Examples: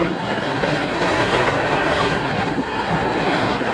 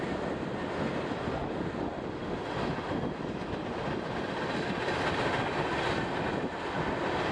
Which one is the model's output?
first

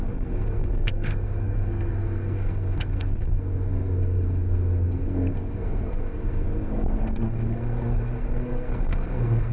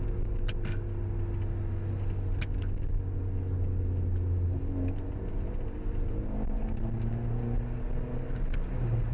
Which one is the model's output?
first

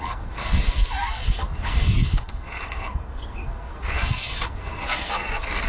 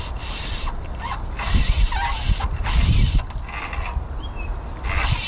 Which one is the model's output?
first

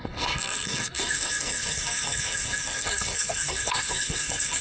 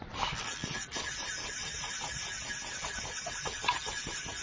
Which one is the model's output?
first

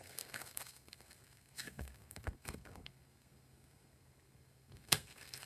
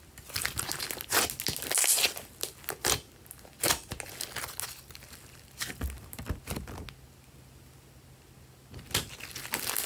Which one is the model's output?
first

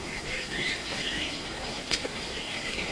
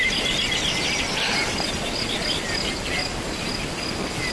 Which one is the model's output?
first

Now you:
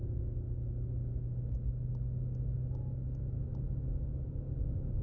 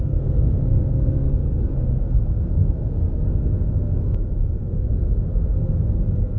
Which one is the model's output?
second